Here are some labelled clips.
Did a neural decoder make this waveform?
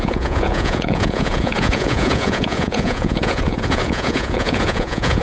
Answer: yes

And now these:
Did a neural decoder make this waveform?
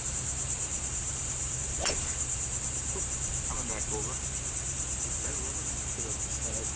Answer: yes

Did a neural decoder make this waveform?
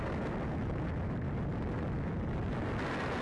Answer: no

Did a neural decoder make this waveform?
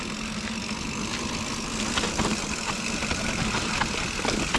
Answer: no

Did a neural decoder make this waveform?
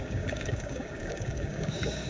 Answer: yes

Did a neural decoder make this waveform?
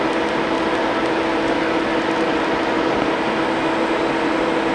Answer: no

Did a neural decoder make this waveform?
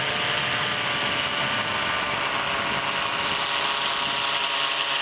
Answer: no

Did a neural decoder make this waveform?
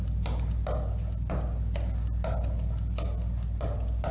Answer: no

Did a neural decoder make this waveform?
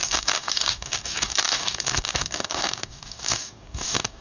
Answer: yes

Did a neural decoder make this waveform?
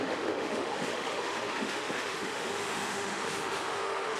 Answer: yes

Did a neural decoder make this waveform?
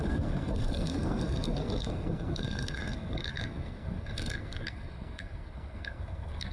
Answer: yes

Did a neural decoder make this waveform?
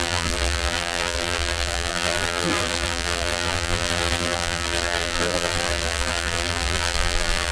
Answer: yes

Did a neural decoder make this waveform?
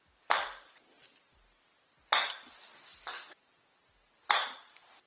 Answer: no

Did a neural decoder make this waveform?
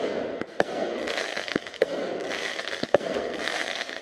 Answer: yes